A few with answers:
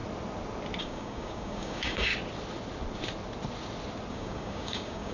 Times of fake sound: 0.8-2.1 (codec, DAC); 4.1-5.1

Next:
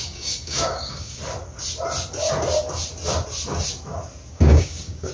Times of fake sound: 0.0-1.2 (codec, DAC); 4.3-5.1